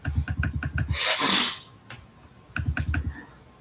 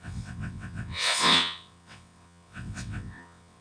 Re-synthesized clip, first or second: second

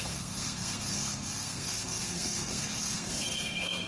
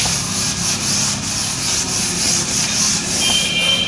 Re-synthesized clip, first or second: first